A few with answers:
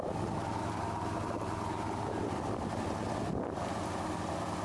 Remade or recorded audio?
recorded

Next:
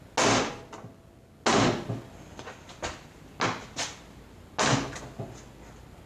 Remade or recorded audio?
recorded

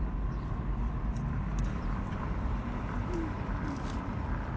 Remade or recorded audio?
remade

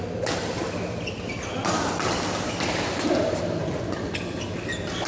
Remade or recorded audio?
recorded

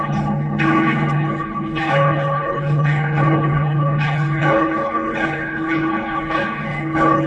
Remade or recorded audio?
remade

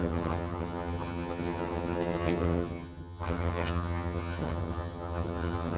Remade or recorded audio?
remade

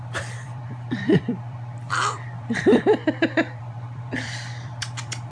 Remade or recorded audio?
remade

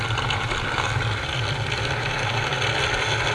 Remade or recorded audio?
recorded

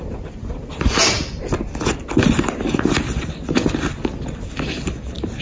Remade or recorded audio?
recorded